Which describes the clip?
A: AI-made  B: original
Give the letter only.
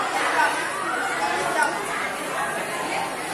B